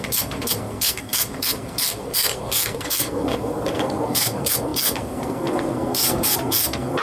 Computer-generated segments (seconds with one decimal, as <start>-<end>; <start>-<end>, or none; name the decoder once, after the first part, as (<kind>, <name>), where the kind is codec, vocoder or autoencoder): 0.0-7.0 (codec, SNAC)